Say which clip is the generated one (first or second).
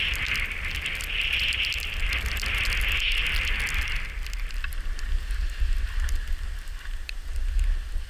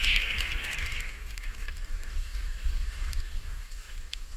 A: second